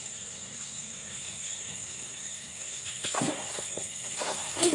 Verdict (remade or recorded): remade